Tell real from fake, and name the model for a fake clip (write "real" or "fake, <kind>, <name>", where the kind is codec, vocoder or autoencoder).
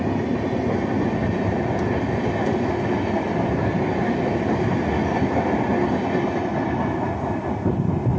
real